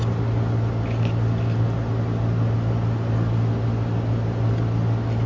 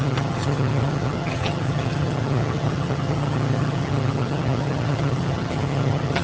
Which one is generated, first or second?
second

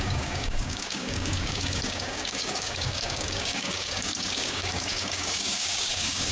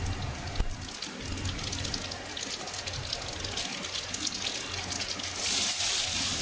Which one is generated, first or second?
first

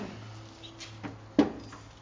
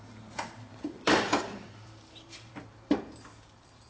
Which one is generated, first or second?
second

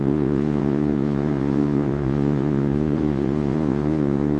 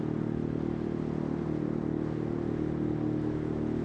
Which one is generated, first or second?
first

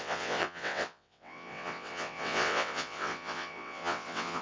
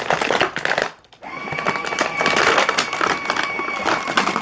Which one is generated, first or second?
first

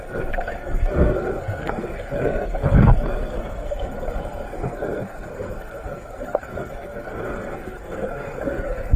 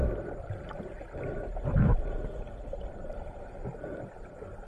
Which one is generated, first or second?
first